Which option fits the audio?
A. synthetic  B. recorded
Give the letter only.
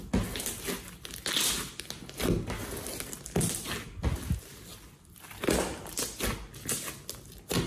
B